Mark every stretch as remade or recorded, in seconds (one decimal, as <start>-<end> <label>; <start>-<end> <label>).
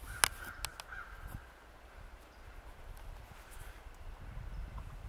0.0-5.1 recorded